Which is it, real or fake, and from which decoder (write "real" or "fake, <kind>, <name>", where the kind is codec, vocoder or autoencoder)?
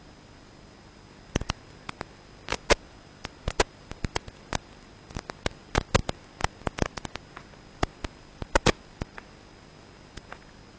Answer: real